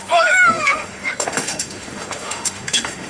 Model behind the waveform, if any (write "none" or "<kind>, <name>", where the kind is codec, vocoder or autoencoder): autoencoder, DAC-VAE